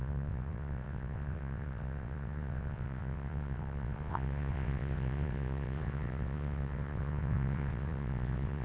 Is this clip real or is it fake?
fake